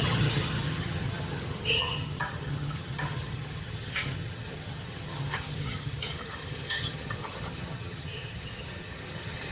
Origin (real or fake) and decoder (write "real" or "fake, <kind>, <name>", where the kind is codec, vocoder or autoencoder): fake, vocoder, HiFi-GAN